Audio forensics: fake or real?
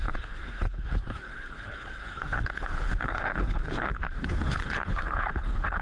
fake